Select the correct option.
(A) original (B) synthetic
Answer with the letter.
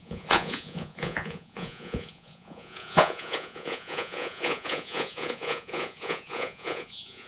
B